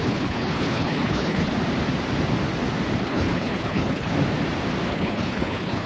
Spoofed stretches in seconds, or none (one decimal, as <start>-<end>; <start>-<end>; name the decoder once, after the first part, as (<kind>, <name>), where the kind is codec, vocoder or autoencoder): 0.0-1.5 (codec, HILCodec); 3.0-4.1; 4.9-5.9